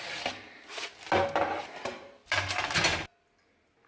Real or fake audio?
real